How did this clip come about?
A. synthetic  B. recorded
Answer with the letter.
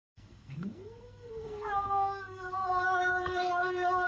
A